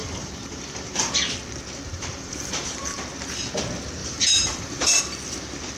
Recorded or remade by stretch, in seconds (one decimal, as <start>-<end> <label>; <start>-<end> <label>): 0.0-1.1 remade; 1.1-1.9 recorded; 1.9-3.1 remade; 3.1-4.0 recorded; 4.0-5.0 remade; 5.0-5.8 recorded